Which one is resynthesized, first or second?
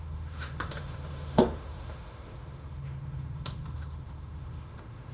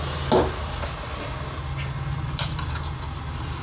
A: first